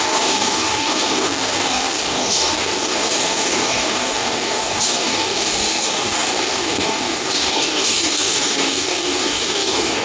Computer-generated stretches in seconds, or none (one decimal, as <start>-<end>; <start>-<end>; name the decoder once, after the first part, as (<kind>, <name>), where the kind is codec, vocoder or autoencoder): 0.0-10.0 (codec, DAC)